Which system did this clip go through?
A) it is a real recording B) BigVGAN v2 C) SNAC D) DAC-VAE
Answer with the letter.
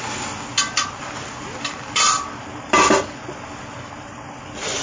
A